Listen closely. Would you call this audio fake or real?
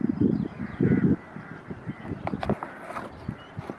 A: real